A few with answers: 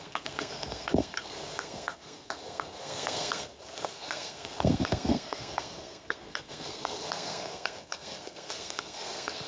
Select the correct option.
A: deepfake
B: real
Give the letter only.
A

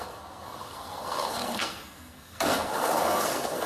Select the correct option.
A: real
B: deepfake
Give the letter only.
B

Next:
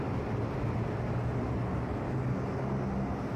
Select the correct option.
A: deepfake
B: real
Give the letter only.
B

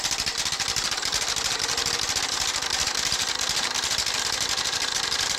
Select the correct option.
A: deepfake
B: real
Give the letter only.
B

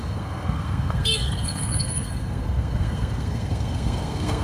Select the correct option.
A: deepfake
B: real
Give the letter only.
A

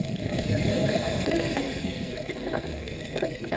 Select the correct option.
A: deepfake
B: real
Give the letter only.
A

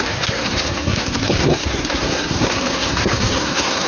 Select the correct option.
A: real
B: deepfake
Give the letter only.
B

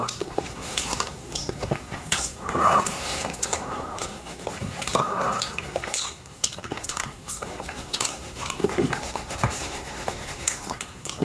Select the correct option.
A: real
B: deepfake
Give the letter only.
B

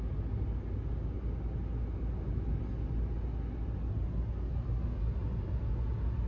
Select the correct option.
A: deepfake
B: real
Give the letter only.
B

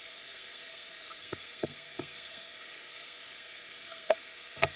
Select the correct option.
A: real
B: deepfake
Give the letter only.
B